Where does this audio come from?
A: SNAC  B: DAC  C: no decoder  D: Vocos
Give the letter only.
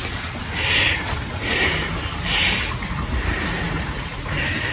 C